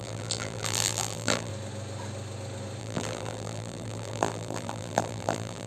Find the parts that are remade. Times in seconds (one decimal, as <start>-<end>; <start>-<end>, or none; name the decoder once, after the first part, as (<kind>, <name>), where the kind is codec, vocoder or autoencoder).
0.0-1.5 (vocoder, BigVGAN v2); 2.8-5.7